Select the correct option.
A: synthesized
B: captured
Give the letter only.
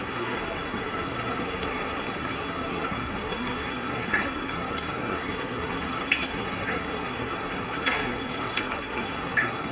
A